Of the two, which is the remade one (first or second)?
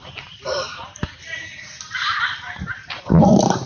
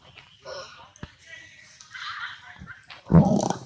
first